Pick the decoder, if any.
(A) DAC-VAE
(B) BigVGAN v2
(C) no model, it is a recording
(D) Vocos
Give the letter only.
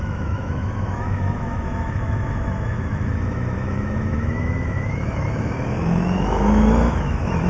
A